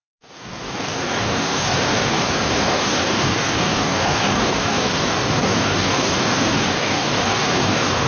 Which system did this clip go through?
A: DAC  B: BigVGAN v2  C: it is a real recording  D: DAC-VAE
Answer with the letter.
A